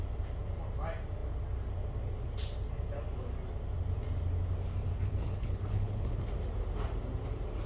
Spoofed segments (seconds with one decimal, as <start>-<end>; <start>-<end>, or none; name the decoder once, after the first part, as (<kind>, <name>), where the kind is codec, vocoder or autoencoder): 4.9-6.2 (codec, HILCodec)